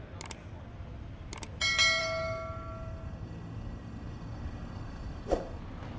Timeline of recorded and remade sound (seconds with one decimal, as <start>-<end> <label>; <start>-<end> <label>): 0.0-2.0 recorded; 2.0-5.6 remade; 5.6-6.0 recorded